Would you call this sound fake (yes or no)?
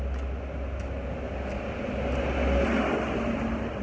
no